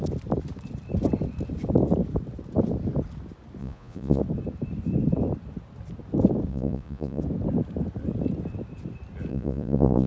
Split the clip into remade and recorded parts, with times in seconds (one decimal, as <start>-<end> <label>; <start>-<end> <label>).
0.0-3.6 recorded; 3.6-4.2 remade; 4.2-6.5 recorded; 6.5-7.2 remade; 7.2-9.3 recorded; 9.3-10.1 remade